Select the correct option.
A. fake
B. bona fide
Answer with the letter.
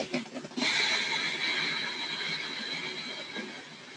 B